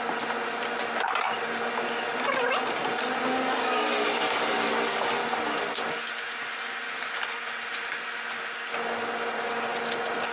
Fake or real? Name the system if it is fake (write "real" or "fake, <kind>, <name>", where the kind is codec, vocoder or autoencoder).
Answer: real